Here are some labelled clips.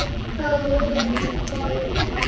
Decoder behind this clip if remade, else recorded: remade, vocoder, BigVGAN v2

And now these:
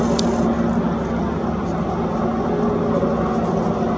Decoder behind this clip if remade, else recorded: recorded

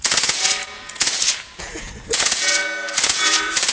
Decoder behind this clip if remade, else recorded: remade, vocoder, Vocos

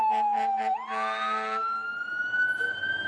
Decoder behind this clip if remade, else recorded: recorded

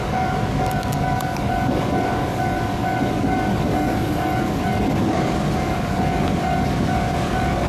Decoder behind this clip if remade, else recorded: remade, codec, DAC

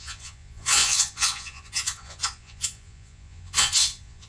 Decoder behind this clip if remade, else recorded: remade, vocoder, Vocos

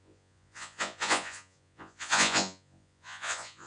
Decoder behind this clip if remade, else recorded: remade, vocoder, Vocos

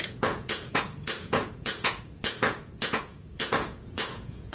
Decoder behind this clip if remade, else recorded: remade, vocoder, Vocos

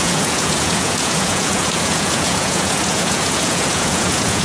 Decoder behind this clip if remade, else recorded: remade, vocoder, Vocos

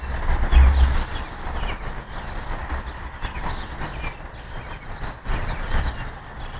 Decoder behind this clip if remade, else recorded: recorded